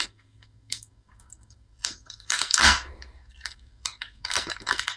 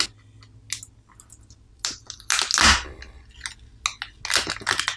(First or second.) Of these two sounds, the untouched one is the second